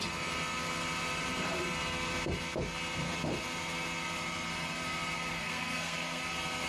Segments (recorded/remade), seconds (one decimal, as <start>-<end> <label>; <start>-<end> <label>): 0.0-5.3 recorded; 5.3-6.2 remade; 6.2-6.7 recorded